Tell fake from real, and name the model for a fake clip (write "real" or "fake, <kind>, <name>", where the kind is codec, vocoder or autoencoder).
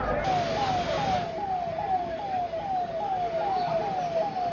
real